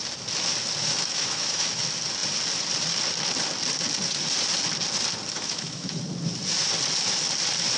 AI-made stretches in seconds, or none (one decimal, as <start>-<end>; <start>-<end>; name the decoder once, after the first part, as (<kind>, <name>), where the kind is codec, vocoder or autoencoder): 0.8-1.8 (autoencoder, DAC-VAE); 5.3-6.0